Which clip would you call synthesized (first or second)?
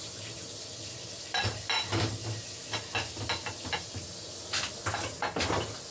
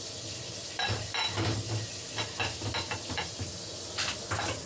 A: second